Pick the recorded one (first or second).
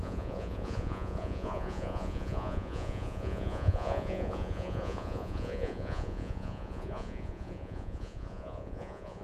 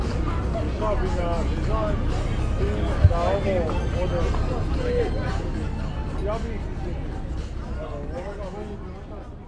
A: second